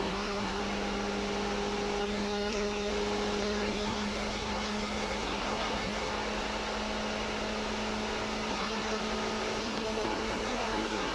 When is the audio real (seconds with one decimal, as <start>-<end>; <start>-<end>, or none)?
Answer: 0.6-2.0; 2.9-3.4; 6.1-8.5; 9.0-9.6